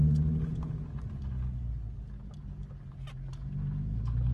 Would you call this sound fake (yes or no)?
no